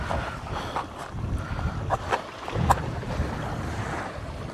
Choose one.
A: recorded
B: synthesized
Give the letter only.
A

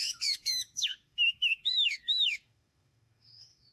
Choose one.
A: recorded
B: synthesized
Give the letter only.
B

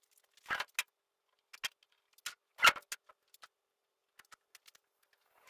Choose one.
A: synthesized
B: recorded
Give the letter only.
B